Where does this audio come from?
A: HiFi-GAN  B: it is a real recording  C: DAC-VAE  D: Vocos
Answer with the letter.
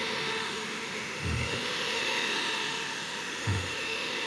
C